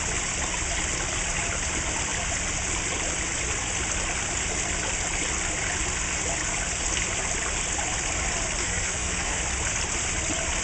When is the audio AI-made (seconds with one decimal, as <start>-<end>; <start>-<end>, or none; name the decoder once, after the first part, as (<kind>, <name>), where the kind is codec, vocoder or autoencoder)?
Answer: 8.6-9.4 (codec, SNAC)